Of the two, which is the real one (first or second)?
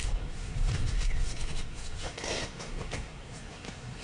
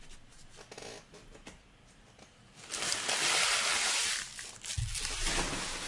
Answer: second